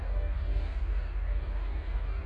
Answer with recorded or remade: remade